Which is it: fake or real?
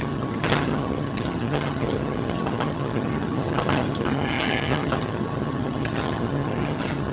fake